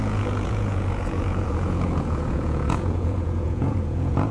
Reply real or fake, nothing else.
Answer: fake